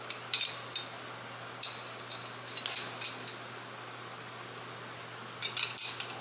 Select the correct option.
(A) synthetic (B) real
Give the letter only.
B